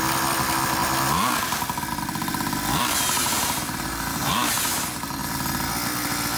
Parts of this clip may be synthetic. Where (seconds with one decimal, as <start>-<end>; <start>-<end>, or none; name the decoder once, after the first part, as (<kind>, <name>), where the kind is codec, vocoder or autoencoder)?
3.2-4.3 (vocoder, BigVGAN v2)